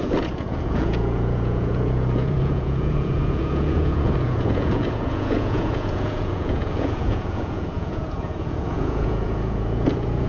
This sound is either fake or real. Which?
fake